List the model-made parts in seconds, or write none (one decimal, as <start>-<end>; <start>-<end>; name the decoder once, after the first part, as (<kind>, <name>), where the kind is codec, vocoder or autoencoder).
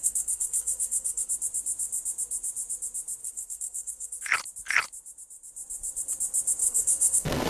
0.0-1.3 (codec, SNAC); 3.2-4.2; 6.6-7.5